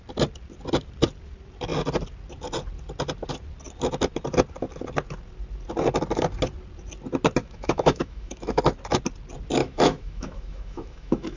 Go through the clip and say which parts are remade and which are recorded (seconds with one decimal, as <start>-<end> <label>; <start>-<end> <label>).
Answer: 0.0-7.4 recorded; 7.4-8.6 remade; 8.6-9.6 recorded; 9.6-11.4 remade